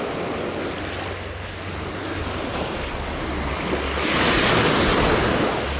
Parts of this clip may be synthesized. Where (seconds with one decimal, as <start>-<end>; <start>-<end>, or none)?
none